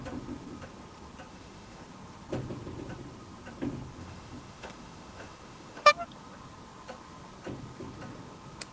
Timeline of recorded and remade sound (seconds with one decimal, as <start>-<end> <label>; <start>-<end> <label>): 0.0-1.3 recorded; 1.3-1.8 remade; 1.8-4.0 recorded; 4.0-5.9 remade; 5.9-8.7 recorded